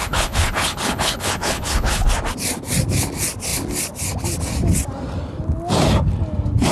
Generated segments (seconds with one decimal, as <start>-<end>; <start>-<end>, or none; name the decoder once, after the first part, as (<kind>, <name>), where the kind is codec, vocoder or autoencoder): 0.0-2.1 (codec, HILCodec)